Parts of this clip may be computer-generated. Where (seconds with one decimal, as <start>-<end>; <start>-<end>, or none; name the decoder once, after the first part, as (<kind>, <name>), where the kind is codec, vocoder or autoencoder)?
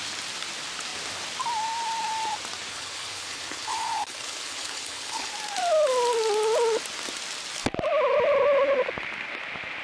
2.7-5.3 (codec, HILCodec)